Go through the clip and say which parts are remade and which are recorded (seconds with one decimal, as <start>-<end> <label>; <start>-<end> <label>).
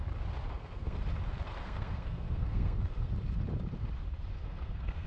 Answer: 0.0-0.5 recorded; 0.5-1.0 remade; 1.0-1.6 recorded; 1.6-3.1 remade; 3.1-4.3 recorded; 4.3-5.1 remade